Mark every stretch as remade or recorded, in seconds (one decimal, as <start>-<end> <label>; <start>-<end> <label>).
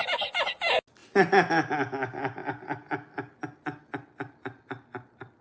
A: 0.0-5.4 recorded